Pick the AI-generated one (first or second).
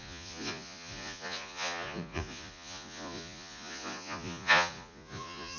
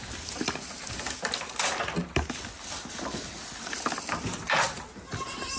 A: first